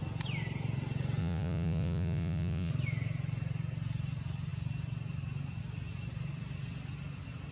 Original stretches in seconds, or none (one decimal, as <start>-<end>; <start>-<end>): 0.0-1.2; 2.7-7.5